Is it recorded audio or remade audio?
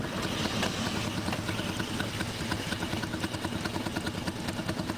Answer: recorded